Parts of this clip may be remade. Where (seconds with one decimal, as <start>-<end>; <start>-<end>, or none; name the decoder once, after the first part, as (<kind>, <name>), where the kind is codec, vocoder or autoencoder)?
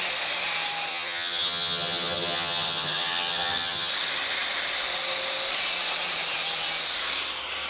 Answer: 0.9-3.9 (vocoder, HiFi-GAN)